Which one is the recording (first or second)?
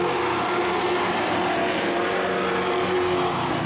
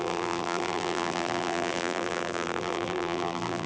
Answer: first